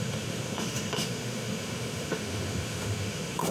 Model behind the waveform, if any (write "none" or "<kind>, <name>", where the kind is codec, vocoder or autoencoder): autoencoder, DAC-VAE